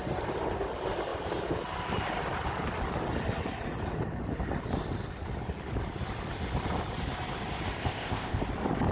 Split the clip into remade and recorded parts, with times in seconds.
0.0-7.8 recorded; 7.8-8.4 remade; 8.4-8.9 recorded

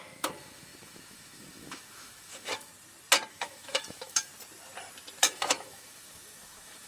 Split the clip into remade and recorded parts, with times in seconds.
0.0-2.7 remade; 2.7-3.3 recorded; 3.3-4.3 remade; 4.3-5.2 recorded; 5.2-6.9 remade